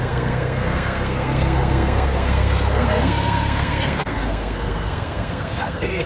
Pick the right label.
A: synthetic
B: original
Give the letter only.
A